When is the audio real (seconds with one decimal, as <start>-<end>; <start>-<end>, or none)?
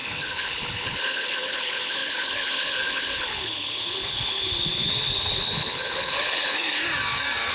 6.8-7.5